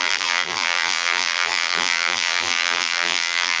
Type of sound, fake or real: fake